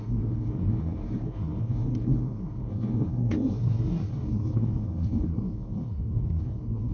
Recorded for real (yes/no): no